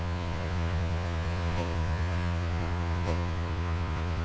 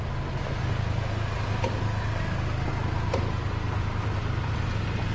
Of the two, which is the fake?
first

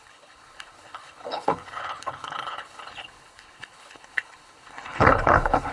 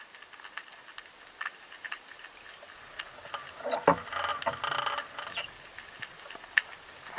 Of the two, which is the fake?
first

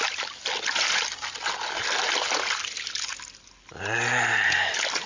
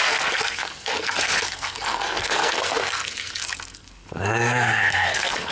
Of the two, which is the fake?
second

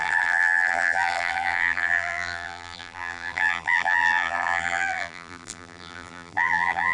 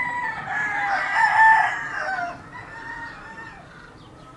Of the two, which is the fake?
first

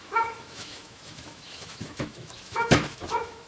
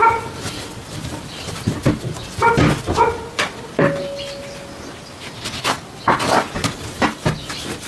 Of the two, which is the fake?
first